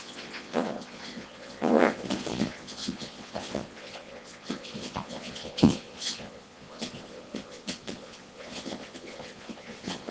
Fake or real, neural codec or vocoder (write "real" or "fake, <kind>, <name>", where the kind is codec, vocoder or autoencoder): fake, vocoder, Vocos